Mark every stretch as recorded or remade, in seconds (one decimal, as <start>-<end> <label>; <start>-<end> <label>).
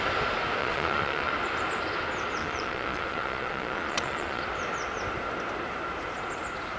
0.0-0.6 recorded; 0.6-1.3 remade; 1.3-2.4 recorded; 2.4-4.4 remade; 4.4-6.8 recorded